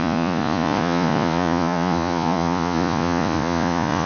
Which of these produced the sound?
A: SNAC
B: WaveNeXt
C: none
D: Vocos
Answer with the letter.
D